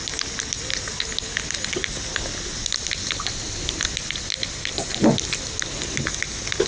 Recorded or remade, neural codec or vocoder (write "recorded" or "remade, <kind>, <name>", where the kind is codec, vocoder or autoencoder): recorded